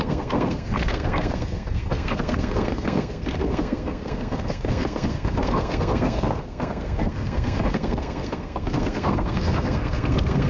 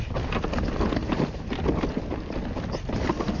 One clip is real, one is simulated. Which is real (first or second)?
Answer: second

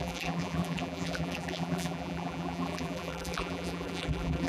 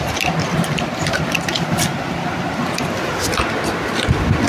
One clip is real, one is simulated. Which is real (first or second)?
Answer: second